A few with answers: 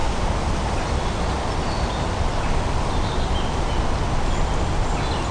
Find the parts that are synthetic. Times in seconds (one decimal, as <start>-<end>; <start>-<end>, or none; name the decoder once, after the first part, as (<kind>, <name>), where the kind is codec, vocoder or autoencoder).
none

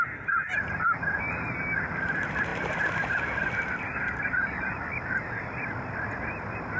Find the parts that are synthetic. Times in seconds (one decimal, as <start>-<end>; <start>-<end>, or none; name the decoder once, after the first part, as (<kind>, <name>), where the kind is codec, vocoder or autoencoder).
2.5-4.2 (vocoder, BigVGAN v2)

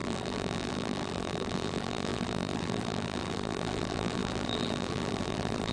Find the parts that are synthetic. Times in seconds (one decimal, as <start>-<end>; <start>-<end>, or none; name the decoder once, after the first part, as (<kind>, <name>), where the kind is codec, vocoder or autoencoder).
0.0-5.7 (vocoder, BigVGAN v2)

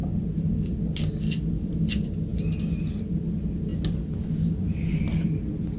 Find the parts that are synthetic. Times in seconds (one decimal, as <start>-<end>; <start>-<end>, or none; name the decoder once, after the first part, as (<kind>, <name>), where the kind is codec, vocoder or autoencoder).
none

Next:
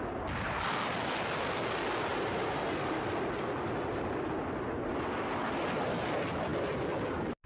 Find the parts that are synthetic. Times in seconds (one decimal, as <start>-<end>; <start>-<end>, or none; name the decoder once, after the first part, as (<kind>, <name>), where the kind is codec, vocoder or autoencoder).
2.1-3.1 (vocoder, BigVGAN v2)

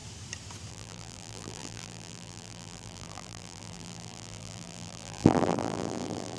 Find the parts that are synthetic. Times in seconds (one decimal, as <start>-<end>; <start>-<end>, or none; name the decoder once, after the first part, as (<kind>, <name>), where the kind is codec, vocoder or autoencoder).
0.7-6.4 (vocoder, BigVGAN v2)